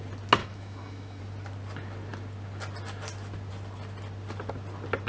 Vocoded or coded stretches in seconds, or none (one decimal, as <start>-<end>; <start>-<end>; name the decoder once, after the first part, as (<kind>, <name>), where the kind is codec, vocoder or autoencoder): 0.4-1.2 (autoencoder, DAC-VAE)